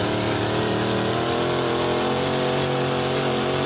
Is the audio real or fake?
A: real